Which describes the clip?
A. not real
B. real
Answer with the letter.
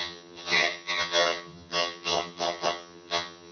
A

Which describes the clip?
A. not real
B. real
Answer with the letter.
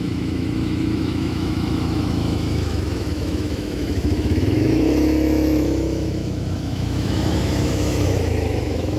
A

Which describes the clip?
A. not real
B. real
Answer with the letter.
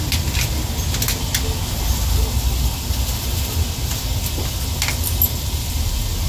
B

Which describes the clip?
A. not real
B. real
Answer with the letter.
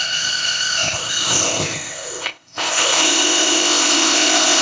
A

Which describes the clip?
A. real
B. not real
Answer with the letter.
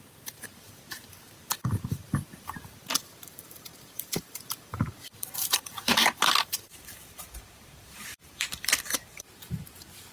B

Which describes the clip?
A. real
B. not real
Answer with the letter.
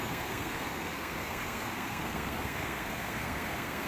B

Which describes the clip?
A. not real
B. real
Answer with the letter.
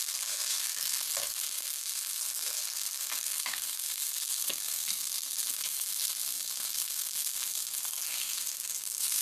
A